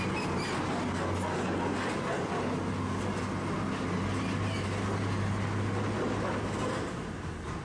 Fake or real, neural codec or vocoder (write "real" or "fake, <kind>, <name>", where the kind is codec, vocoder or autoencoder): real